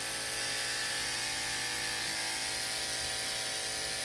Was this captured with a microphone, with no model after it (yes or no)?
yes